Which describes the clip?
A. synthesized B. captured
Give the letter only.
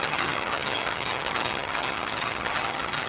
A